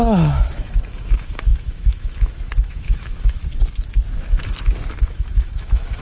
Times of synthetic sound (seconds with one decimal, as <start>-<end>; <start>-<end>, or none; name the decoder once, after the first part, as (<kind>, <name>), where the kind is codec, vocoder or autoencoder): 0.0-3.4 (autoencoder, DAC-VAE); 4.9-6.0

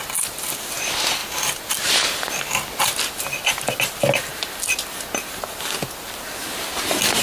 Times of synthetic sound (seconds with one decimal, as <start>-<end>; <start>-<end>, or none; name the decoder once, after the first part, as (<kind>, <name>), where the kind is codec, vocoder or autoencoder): none